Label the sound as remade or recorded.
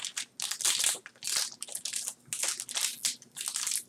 recorded